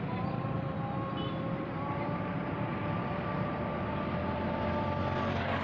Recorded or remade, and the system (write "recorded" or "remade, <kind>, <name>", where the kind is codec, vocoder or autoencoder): remade, vocoder, BigVGAN v2